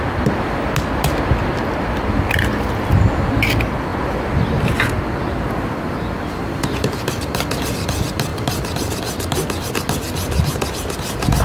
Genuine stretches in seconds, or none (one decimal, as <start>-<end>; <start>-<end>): 0.0-11.4